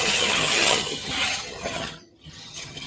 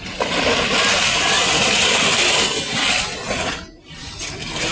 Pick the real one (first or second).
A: second